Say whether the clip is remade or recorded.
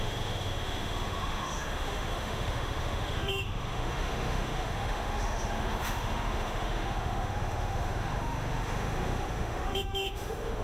remade